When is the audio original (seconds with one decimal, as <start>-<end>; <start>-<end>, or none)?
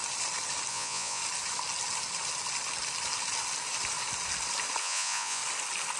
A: 0.0-0.7; 1.2-4.8; 5.4-6.0